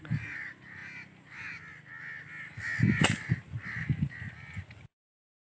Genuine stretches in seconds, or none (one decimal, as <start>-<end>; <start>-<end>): 0.0-5.5